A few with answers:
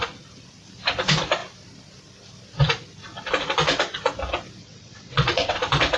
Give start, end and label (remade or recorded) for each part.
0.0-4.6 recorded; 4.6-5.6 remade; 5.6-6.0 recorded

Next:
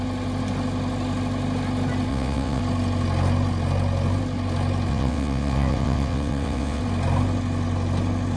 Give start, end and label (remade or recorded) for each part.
0.0-2.1 recorded; 2.1-2.6 remade; 2.6-4.9 recorded; 4.9-6.8 remade; 6.8-8.4 recorded

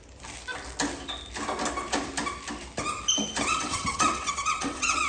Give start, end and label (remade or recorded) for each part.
0.0-3.5 recorded; 3.5-5.1 remade

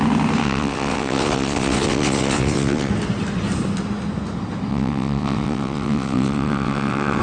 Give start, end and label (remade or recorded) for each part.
0.0-0.4 recorded; 0.4-2.9 remade; 2.9-4.7 recorded; 4.7-7.2 remade

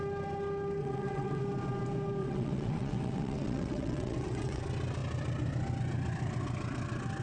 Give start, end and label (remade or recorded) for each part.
0.0-0.8 recorded; 0.8-1.4 remade; 1.4-2.2 recorded; 2.2-4.6 remade; 4.6-7.2 recorded

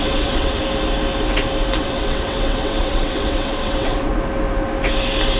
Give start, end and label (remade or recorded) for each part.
0.0-0.6 remade; 0.6-1.8 recorded; 1.8-4.1 remade; 4.1-5.4 recorded